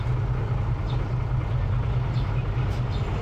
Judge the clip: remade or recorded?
recorded